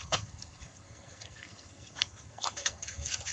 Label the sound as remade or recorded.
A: remade